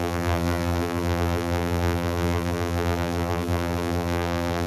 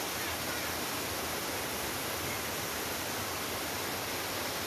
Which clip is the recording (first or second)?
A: second